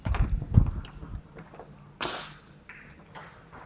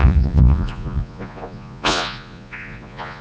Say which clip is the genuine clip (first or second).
first